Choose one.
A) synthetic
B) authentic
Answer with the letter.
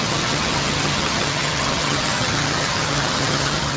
A